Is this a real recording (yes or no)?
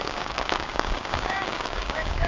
no